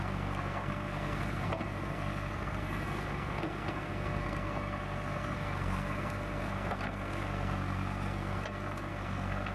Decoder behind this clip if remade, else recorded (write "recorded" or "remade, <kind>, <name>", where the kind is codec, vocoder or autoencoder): remade, codec, SNAC